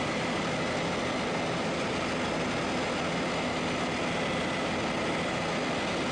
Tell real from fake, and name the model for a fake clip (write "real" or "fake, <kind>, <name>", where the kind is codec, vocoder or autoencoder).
real